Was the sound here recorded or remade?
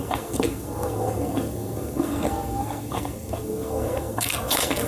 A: remade